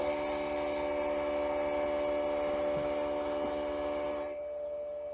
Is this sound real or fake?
real